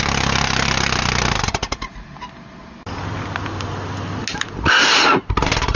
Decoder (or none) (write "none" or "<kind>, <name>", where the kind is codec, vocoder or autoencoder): none